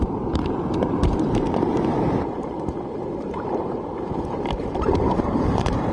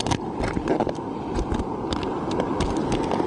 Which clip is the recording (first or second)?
second